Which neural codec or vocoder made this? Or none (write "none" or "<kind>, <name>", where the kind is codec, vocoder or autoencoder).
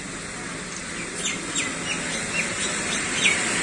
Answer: none